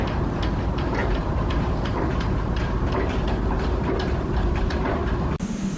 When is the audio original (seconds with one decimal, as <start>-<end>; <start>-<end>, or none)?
0.0-1.0; 4.5-5.8